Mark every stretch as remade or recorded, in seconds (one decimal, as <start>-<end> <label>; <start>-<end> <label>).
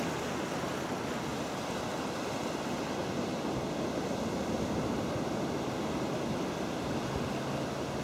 0.0-1.3 recorded; 1.3-3.6 remade; 3.6-8.0 recorded